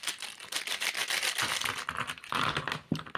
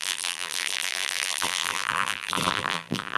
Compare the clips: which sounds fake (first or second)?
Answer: second